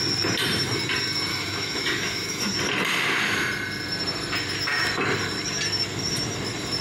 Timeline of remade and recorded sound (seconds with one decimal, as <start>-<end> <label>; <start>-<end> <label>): 0.0-1.3 recorded; 1.3-2.5 remade; 2.5-6.8 recorded